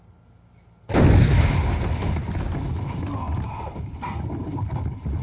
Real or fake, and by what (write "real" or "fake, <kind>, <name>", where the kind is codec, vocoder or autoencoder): real